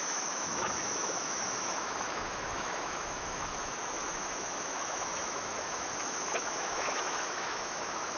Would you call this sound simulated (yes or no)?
yes